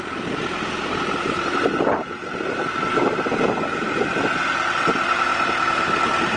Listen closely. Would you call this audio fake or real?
real